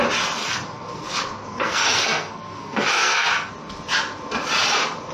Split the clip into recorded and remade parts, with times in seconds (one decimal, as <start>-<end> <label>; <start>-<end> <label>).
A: 0.0-0.4 recorded; 0.4-3.5 remade; 3.5-5.1 recorded